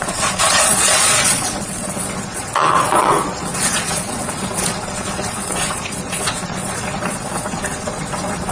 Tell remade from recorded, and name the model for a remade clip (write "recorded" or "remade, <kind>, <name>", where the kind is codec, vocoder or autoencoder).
remade, vocoder, Vocos